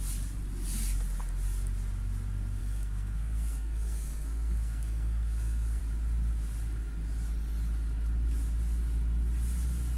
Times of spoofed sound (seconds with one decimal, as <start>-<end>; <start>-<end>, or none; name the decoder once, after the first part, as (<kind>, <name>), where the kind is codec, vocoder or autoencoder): 2.6-5.8 (codec, SNAC)